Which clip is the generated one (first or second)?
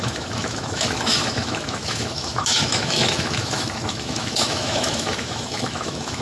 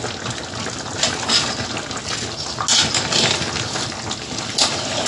first